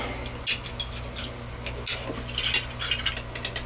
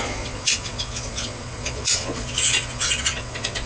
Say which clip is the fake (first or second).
second